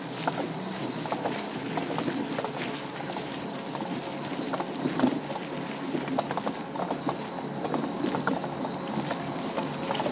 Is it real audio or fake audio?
real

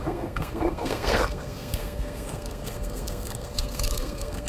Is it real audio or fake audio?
fake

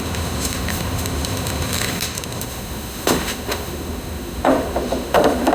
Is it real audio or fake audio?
fake